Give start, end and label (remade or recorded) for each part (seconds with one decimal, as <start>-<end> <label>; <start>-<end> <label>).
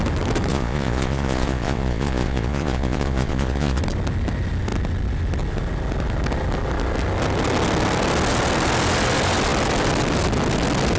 0.0-0.5 recorded; 0.5-3.8 remade; 3.8-11.0 recorded